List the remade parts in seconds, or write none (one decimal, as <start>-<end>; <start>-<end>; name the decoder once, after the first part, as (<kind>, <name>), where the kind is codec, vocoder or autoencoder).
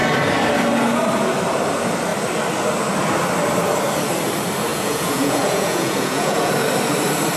4.7-6.5 (vocoder, Vocos)